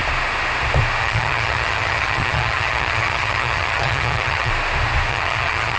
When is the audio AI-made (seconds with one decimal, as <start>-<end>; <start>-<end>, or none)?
1.0-4.5; 5.1-5.8